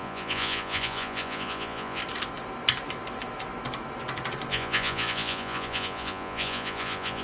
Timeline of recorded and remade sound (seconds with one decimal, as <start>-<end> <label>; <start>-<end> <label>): 0.0-2.0 remade; 2.0-4.5 recorded; 4.5-7.2 remade